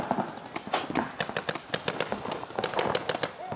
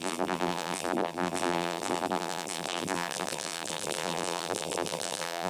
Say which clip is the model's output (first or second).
second